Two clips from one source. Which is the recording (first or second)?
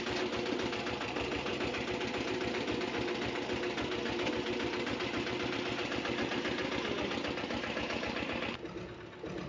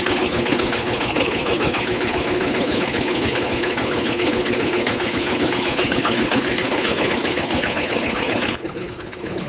first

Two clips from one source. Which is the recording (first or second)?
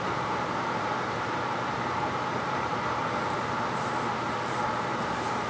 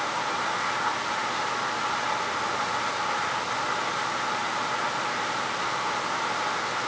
second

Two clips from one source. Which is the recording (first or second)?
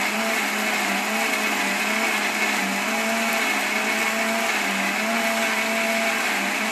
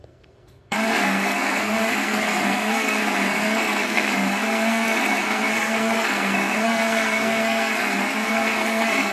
first